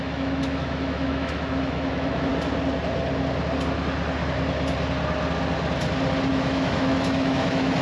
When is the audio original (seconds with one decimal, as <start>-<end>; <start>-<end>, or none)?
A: 2.3-6.3